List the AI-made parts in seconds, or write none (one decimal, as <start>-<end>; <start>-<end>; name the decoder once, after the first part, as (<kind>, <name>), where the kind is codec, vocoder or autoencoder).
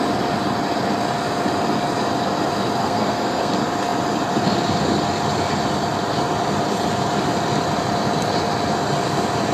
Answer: 2.8-3.5 (codec, SNAC)